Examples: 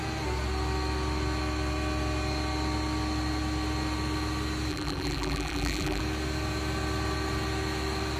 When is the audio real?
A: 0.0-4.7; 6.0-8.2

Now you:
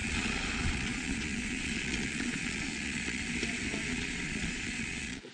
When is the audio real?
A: 3.2-3.9

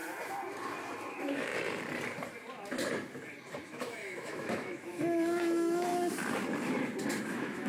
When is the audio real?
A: 0.0-1.1; 1.5-3.6; 5.9-7.2